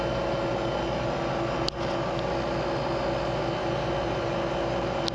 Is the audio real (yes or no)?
yes